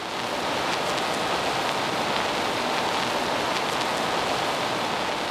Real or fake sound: real